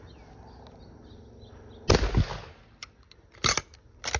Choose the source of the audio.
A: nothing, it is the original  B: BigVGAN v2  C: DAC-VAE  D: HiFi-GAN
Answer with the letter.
A